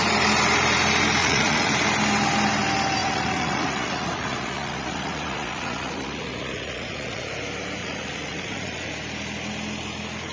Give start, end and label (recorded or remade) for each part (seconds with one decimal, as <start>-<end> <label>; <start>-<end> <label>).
0.0-1.2 recorded; 1.2-1.7 remade; 1.7-3.0 recorded; 3.0-7.3 remade; 7.3-7.8 recorded; 7.8-8.9 remade; 8.9-10.3 recorded